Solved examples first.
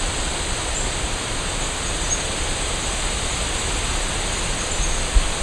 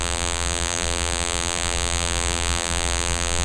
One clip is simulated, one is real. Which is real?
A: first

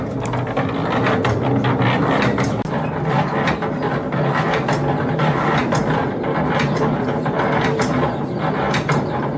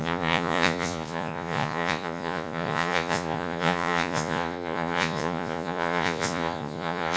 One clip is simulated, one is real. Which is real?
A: first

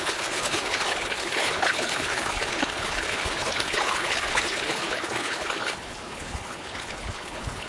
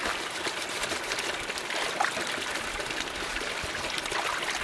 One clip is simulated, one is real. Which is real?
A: second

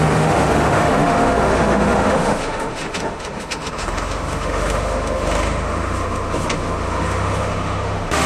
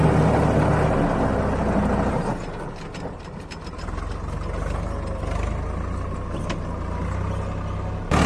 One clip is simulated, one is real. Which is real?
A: second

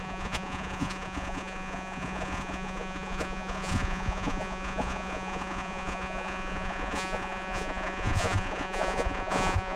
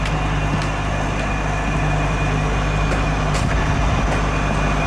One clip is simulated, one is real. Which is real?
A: second